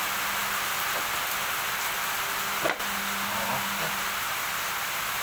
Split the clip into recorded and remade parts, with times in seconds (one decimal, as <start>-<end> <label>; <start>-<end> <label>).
0.0-5.2 recorded